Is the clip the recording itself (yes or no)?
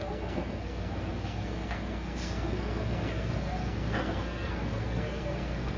no